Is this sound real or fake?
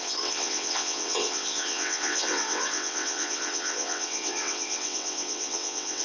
fake